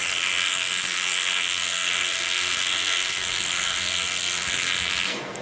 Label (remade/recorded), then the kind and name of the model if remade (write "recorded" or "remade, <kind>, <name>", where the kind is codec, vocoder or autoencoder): remade, codec, SNAC